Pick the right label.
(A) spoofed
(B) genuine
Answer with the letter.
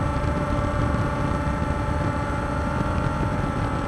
B